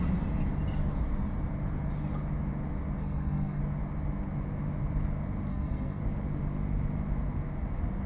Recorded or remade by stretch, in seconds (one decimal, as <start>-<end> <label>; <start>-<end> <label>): 0.0-3.0 recorded; 3.0-3.6 remade; 3.6-5.5 recorded; 5.5-6.0 remade; 6.0-8.1 recorded